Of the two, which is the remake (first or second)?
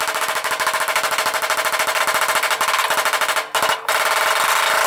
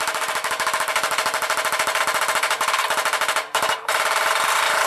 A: second